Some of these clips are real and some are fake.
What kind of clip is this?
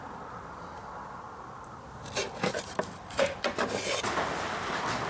fake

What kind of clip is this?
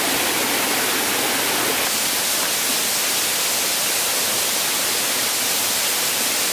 real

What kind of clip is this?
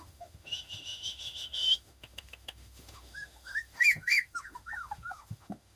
fake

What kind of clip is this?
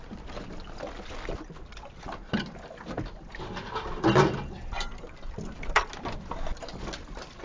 real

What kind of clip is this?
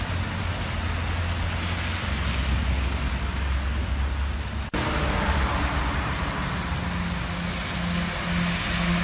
real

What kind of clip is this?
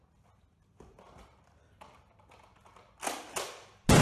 real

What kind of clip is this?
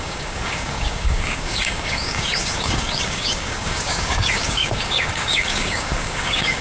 fake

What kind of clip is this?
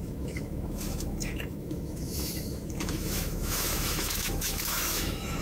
fake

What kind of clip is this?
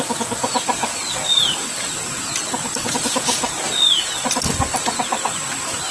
real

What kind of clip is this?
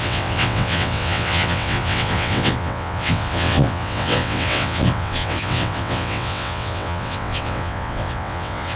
fake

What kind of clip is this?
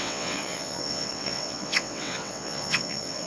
fake